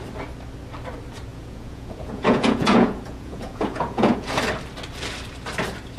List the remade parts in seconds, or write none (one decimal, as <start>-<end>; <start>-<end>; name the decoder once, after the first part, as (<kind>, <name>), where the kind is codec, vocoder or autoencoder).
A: 1.3-4.4 (vocoder, Vocos)